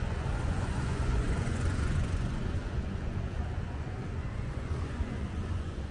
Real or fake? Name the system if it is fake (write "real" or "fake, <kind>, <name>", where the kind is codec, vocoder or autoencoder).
fake, vocoder, Vocos